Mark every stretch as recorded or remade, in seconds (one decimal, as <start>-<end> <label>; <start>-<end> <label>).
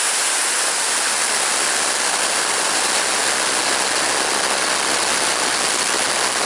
0.0-6.5 recorded